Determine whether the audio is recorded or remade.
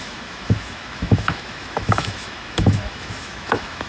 remade